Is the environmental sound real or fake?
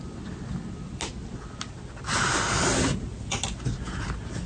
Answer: real